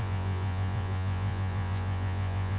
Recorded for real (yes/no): no